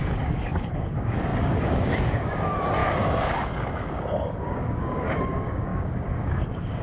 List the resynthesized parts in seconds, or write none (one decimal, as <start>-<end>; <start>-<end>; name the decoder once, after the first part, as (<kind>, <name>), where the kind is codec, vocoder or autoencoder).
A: 0.0-6.8 (codec, DAC)